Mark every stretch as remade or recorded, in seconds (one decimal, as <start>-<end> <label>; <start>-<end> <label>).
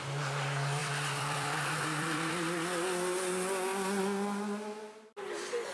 0.0-0.8 recorded; 0.8-2.3 remade; 2.3-4.0 recorded; 4.0-5.3 remade; 5.3-5.7 recorded